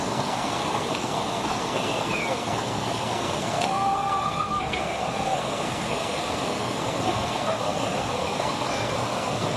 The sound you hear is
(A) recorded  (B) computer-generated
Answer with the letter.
B